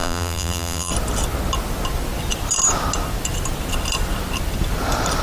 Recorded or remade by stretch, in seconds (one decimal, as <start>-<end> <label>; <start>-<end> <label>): 0.0-0.9 remade; 0.9-5.2 recorded